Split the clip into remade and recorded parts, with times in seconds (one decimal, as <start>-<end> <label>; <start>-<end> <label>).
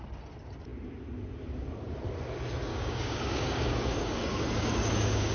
0.0-2.7 recorded; 2.7-5.3 remade